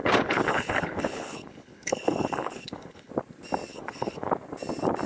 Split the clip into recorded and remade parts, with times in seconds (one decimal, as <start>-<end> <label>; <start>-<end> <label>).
0.0-3.1 remade; 3.1-3.7 recorded; 3.7-4.3 remade; 4.3-5.1 recorded